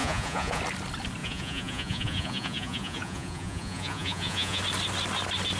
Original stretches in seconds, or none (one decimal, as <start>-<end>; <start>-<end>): 0.6-1.2; 4.6-5.6